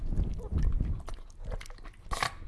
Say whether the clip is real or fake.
real